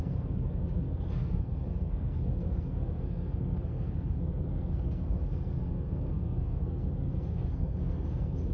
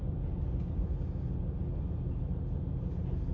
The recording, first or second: second